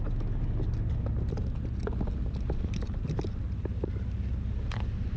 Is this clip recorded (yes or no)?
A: yes